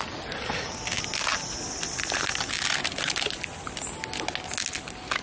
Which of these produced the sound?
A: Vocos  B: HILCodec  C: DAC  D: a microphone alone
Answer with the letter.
D